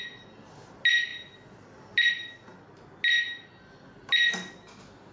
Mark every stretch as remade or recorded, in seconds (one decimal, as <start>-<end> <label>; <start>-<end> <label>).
0.0-5.1 recorded